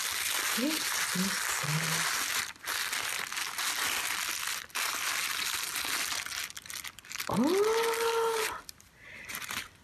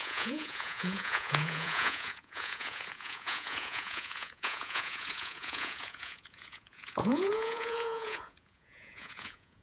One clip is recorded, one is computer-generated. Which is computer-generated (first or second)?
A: second